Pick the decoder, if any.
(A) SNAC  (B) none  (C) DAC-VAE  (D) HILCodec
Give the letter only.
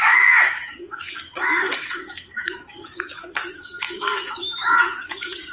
C